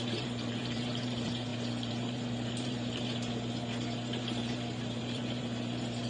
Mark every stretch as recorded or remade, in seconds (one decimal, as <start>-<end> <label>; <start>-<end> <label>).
0.0-6.1 remade